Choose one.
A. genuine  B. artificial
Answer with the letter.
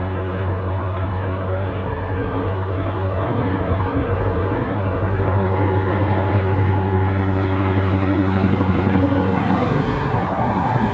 B